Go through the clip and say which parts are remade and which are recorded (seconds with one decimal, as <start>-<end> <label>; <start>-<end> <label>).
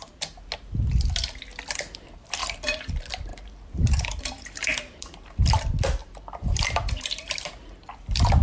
0.0-2.4 recorded; 2.4-2.9 remade; 2.9-3.3 recorded; 3.3-5.4 remade; 5.4-6.0 recorded; 6.0-7.5 remade; 7.5-8.4 recorded